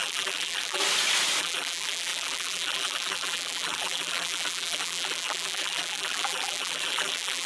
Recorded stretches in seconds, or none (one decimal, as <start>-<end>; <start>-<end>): 0.8-1.4